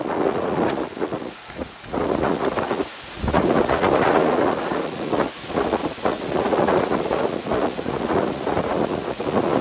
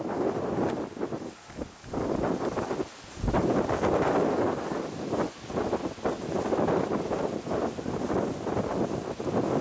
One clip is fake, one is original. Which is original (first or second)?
second